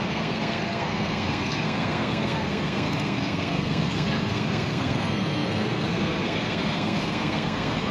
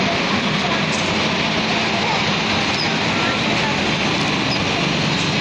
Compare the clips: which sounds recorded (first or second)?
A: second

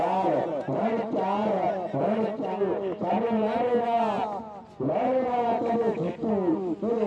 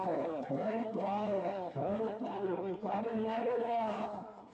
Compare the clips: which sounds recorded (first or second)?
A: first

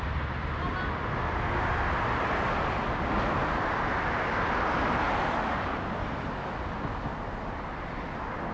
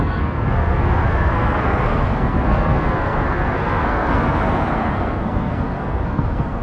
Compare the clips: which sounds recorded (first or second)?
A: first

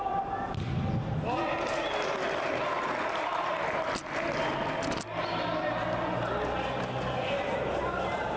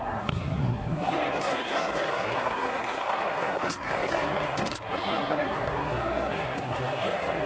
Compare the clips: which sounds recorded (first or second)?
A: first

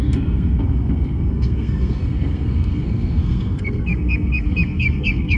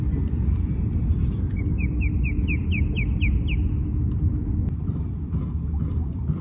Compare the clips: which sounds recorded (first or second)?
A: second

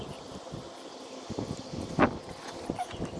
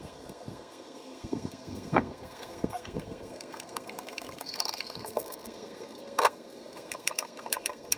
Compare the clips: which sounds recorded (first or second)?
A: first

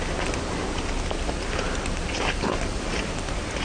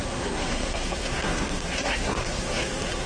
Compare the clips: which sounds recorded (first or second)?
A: first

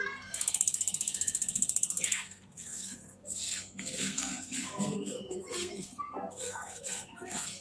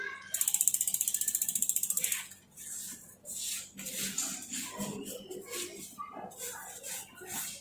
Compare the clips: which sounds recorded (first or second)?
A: second